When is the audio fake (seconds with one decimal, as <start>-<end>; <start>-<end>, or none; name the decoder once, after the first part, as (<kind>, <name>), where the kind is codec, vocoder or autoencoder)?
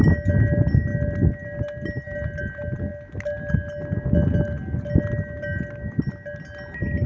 none